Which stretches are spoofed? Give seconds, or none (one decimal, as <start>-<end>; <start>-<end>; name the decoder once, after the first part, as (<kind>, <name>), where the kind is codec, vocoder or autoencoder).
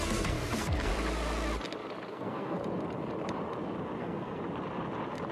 0.0-0.9 (codec, SNAC); 2.1-2.6; 4.0-4.4